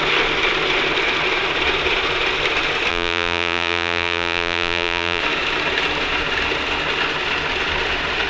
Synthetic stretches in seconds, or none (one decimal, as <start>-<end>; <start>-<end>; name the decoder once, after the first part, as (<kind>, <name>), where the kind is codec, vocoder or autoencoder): 2.9-5.2 (vocoder, BigVGAN v2)